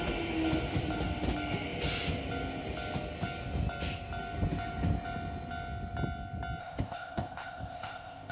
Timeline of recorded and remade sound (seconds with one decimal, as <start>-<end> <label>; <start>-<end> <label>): 0.0-6.6 recorded; 6.6-8.3 remade